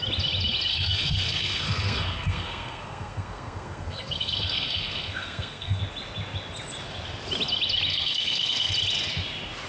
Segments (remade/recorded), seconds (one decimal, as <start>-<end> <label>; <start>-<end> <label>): 0.0-0.7 recorded; 0.7-5.8 remade; 5.8-7.9 recorded; 7.9-8.7 remade; 8.7-9.7 recorded